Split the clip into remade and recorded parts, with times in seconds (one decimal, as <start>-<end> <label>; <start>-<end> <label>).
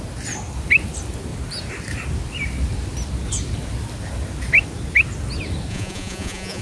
0.0-5.7 recorded; 5.7-6.6 remade